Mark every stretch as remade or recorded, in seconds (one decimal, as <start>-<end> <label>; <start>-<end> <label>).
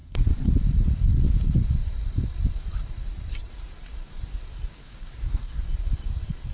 0.0-0.5 remade; 0.5-4.8 recorded; 4.8-5.6 remade; 5.6-6.5 recorded